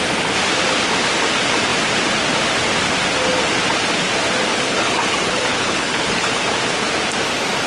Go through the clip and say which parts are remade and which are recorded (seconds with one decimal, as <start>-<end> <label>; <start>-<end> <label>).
0.0-4.5 recorded; 4.5-6.4 remade; 6.4-7.7 recorded